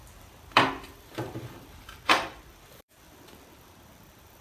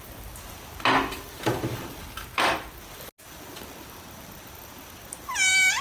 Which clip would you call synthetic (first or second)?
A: first